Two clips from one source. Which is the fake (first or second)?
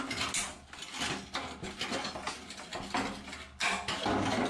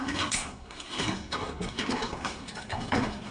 second